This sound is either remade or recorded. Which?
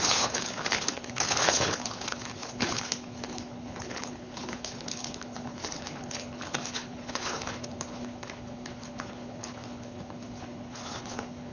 remade